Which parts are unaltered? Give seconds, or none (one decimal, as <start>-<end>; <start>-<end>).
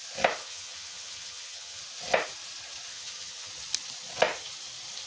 0.0-0.4; 1.8-2.9; 3.5-5.1